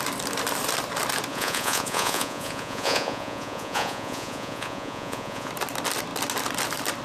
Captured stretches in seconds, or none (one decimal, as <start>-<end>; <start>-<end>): 0.0-1.3; 5.5-7.0